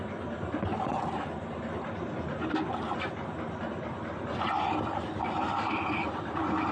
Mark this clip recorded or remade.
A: recorded